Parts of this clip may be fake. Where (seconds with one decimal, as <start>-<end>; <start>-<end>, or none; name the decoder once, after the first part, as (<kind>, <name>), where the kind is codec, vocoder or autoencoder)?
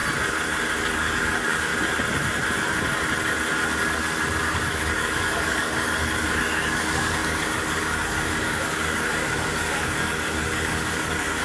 0.8-1.7 (codec, DAC); 4.4-11.4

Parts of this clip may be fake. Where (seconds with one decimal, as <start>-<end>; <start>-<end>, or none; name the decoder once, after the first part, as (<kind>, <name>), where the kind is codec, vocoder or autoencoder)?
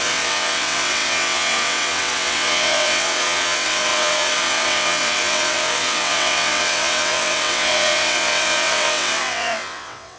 0.0-10.2 (vocoder, WaveNeXt)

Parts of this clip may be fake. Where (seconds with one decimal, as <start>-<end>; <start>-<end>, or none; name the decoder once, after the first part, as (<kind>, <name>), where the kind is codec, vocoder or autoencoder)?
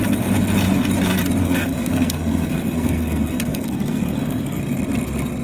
1.4-4.6 (codec, SNAC)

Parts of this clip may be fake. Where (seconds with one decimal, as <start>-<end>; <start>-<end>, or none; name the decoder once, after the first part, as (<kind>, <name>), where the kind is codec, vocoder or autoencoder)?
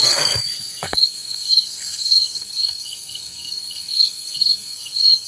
0.0-5.3 (codec, SNAC)